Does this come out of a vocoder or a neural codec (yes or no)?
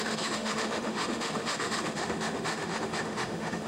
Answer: yes